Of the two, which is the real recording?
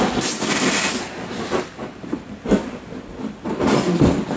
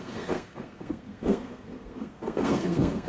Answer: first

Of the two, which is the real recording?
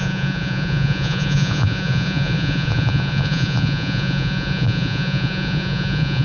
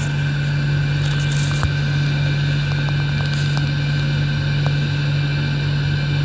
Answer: second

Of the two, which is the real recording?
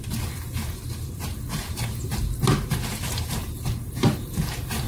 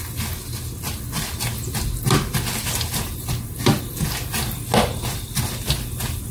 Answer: second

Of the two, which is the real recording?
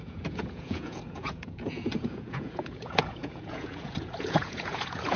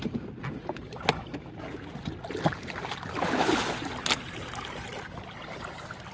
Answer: second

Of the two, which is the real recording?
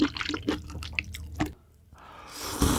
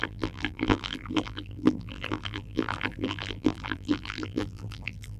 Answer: first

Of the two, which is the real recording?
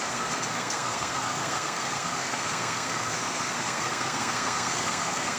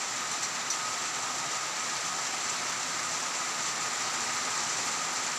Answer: second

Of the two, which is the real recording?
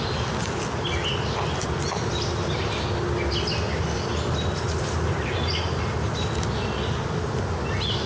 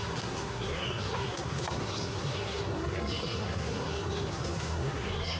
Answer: first